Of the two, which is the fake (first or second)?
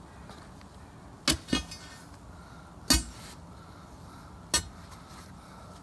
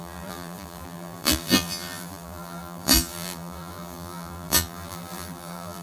second